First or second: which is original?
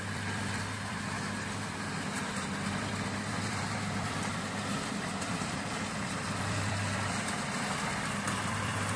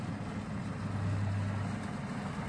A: second